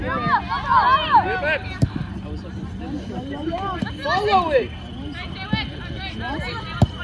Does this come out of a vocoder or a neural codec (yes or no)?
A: no